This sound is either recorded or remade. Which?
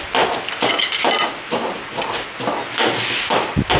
recorded